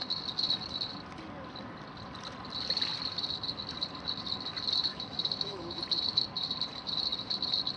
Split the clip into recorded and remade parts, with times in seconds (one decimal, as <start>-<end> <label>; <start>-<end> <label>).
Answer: 0.0-4.9 recorded; 4.9-5.8 remade; 5.8-7.8 recorded